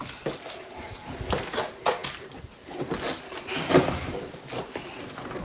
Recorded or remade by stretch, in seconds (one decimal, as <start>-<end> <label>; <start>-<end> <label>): 0.0-5.4 recorded